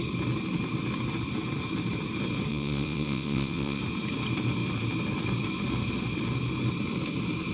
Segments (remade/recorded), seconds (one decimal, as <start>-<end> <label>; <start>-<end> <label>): 0.0-2.5 recorded; 2.5-3.8 remade; 3.8-7.5 recorded